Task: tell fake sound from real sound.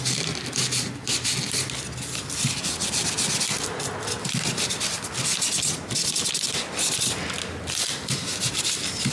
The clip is real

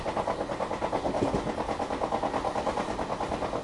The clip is real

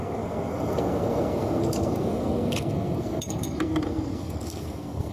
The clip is fake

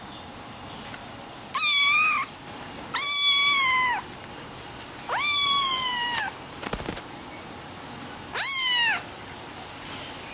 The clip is real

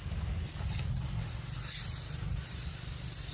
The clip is real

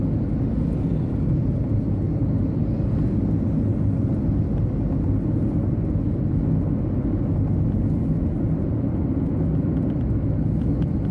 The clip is real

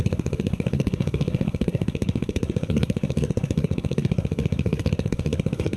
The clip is fake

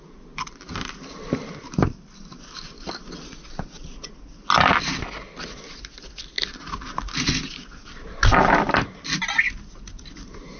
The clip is real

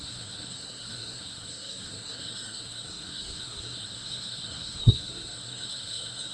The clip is fake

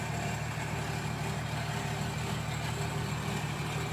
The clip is real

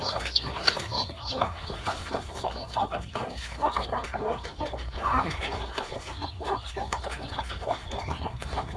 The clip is fake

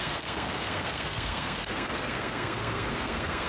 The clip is fake